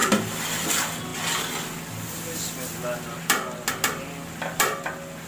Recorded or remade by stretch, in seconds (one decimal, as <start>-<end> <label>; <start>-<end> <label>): 0.0-5.3 recorded